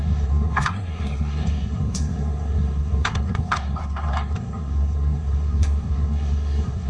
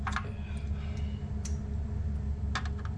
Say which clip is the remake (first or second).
first